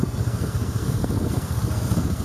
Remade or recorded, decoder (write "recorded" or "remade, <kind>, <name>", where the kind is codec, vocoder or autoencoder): remade, codec, SNAC